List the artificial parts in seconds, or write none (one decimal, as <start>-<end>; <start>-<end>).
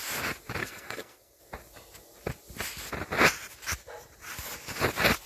0.6-1.4